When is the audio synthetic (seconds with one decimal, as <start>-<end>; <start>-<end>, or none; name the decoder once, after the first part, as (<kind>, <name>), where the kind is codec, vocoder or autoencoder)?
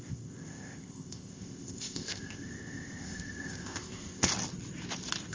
0.0-4.3 (codec, ZipCodec)